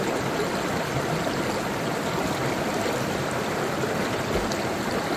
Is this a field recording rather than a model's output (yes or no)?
yes